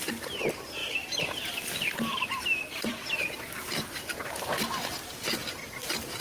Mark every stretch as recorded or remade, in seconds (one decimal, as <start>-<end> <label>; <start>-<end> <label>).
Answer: 0.0-0.8 recorded; 0.8-4.3 remade; 4.3-5.4 recorded; 5.4-6.2 remade